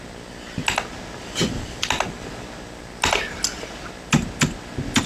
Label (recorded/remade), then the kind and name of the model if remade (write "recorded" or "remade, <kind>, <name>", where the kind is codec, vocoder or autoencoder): recorded